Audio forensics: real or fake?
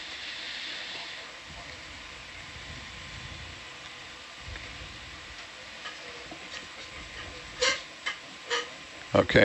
real